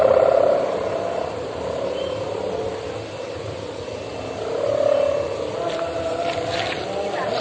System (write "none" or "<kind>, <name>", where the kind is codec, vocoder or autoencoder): none